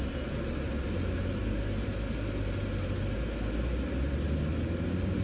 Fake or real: real